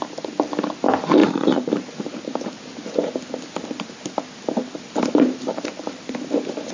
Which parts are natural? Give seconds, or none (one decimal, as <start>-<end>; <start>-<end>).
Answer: 0.0-1.2; 1.7-6.7